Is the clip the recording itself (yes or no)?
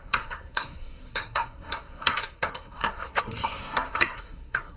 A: no